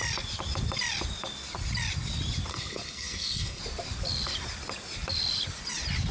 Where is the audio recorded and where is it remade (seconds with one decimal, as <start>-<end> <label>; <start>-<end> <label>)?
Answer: 0.0-2.5 recorded; 2.5-3.6 remade; 3.6-6.1 recorded